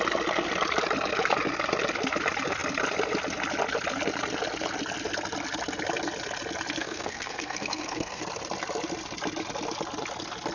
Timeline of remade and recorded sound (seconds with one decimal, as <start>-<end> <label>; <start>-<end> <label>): 0.0-6.8 recorded; 6.8-8.2 remade; 8.2-10.5 recorded

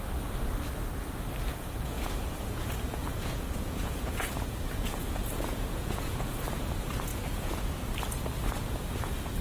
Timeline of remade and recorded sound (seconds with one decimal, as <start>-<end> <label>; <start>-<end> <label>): 0.0-1.5 recorded; 1.5-6.6 remade; 6.6-7.1 recorded; 7.1-7.9 remade; 7.9-9.4 recorded

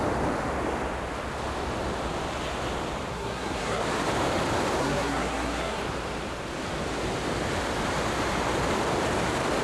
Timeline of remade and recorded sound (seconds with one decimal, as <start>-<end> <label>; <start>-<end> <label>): 0.0-3.1 recorded; 3.1-3.8 remade; 3.8-4.8 recorded; 4.8-5.8 remade; 5.8-9.6 recorded

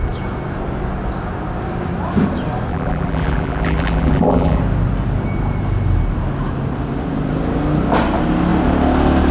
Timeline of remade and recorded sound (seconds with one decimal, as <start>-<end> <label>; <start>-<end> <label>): 0.0-2.7 recorded; 2.7-4.6 remade; 4.6-9.3 recorded